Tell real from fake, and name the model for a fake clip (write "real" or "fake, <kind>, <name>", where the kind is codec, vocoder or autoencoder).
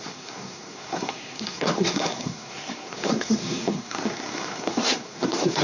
fake, codec, SNAC